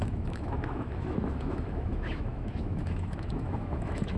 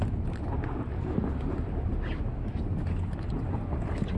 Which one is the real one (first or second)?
second